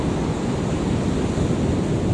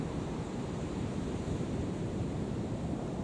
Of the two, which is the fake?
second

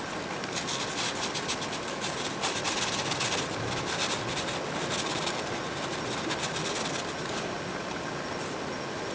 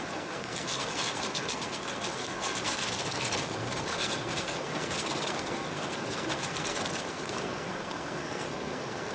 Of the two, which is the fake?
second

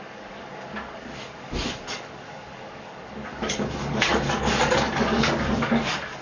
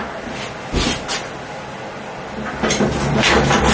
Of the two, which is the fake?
first